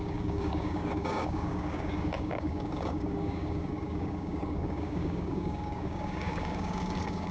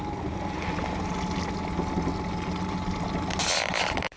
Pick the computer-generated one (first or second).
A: first